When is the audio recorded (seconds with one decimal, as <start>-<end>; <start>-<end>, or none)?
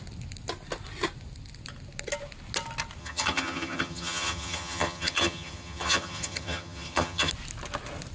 0.0-3.0; 7.3-8.1